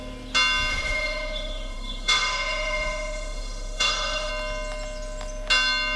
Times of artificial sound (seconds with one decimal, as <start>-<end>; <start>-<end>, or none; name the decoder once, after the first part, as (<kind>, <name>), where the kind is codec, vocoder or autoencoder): 0.7-4.3 (autoencoder, DAC-VAE)